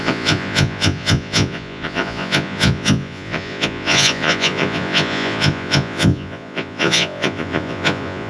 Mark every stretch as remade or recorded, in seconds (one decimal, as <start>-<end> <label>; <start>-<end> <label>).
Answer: 0.0-8.3 remade